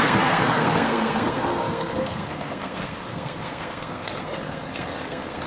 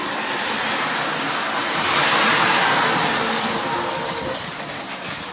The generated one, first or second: first